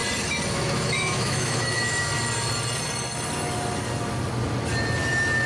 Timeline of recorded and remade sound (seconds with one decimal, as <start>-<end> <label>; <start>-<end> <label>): 0.0-0.5 recorded; 0.5-2.1 remade; 2.1-5.5 recorded